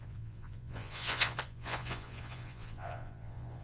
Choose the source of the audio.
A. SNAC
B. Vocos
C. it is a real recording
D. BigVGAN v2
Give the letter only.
B